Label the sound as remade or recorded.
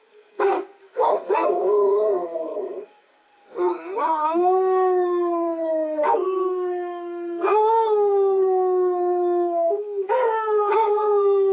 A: remade